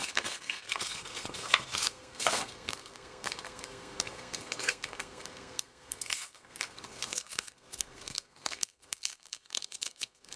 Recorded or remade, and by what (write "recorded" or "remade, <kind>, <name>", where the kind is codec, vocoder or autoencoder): remade, codec, SNAC